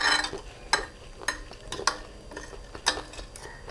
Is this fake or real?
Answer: real